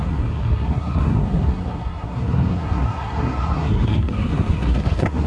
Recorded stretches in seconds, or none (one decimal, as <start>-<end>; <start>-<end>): none